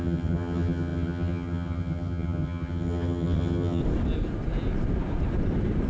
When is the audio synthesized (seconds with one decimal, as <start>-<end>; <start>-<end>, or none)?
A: 0.0-3.8